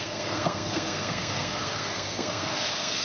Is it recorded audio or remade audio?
remade